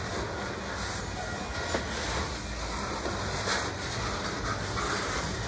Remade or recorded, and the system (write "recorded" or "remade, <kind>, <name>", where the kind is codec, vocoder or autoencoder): recorded